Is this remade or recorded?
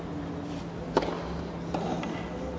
recorded